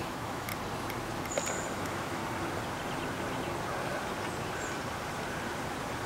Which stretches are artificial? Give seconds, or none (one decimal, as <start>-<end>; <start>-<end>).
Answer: 0.0-0.5; 1.7-2.2